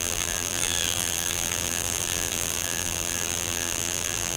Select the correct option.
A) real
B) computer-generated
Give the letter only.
B